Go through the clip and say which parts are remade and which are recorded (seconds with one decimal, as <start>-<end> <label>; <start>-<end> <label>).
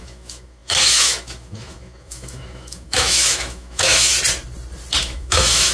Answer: 0.0-4.1 remade; 4.1-5.0 recorded; 5.0-5.7 remade